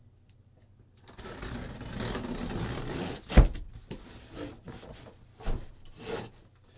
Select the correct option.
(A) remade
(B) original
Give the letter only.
B